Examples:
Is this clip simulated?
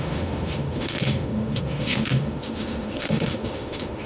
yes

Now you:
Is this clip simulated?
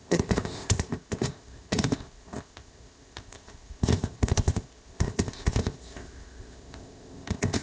yes